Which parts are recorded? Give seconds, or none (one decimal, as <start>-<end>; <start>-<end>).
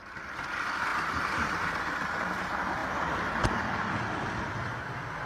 0.0-0.9; 1.8-2.8; 4.0-5.3